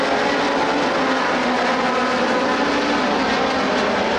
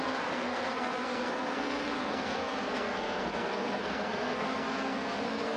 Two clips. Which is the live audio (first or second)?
first